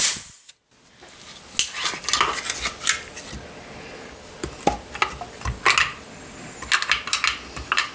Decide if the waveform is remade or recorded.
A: recorded